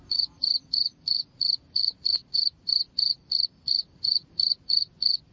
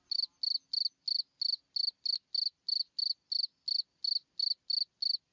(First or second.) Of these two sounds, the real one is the second